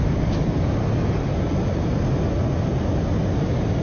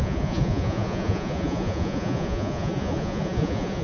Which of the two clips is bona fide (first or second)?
first